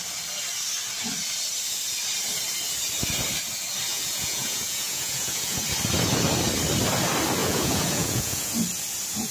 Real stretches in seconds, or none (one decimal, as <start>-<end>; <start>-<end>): 0.0-3.9; 5.6-7.4; 8.5-9.3